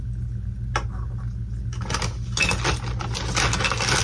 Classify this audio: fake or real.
real